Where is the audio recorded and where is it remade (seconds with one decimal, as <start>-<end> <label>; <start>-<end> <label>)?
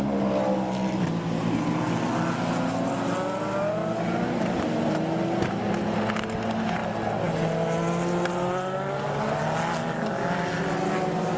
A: 0.0-11.4 recorded